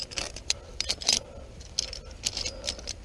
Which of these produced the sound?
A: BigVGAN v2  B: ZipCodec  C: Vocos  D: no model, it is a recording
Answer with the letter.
D